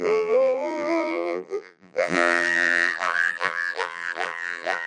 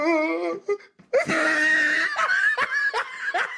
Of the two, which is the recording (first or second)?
second